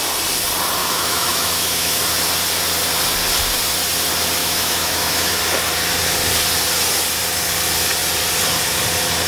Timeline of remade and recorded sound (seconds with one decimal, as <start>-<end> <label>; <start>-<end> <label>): 0.0-0.8 recorded; 0.8-2.0 remade; 2.0-4.4 recorded; 4.4-5.4 remade; 5.4-9.3 recorded

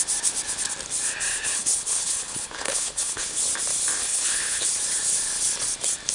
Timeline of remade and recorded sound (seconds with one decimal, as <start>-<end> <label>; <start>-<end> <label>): 0.0-1.3 recorded; 1.3-3.4 remade; 3.4-4.0 recorded; 4.0-4.7 remade; 4.7-6.1 recorded

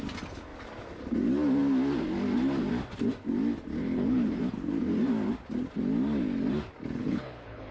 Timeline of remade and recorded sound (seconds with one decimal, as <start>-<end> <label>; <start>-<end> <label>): 0.0-3.8 recorded; 3.8-4.4 remade; 4.4-7.0 recorded; 7.0-7.7 remade

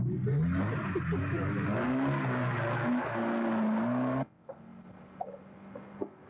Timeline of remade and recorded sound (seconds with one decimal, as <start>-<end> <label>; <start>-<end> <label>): 0.0-1.2 recorded; 1.2-3.5 remade; 3.5-6.3 recorded

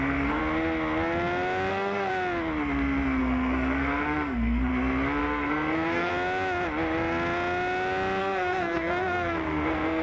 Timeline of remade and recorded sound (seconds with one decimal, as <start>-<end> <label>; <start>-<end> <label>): 0.0-0.4 remade; 0.4-1.7 recorded; 1.7-2.1 remade; 2.1-3.2 recorded; 3.2-4.7 remade; 4.7-5.2 recorded; 5.2-6.1 remade; 6.1-8.2 recorded; 8.2-10.0 remade

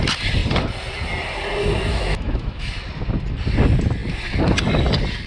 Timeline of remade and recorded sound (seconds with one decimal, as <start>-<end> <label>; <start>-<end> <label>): 0.0-1.9 recorded; 1.9-2.7 remade; 2.7-5.3 recorded

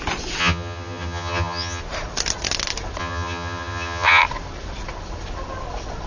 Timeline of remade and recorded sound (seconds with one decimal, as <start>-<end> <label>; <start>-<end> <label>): 0.0-0.4 recorded; 0.4-1.8 remade; 1.8-3.0 recorded; 3.0-4.2 remade; 4.2-6.1 recorded

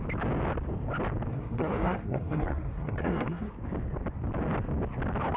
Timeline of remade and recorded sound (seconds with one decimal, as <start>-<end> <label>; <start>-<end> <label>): 0.0-1.3 recorded; 1.3-3.5 remade; 3.5-5.4 recorded